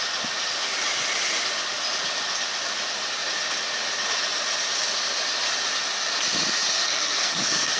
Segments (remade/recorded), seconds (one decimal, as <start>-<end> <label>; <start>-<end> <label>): 0.0-6.8 recorded; 6.8-7.8 remade